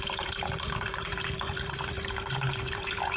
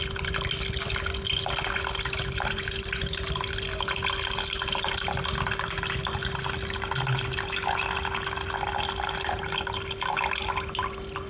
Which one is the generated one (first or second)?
first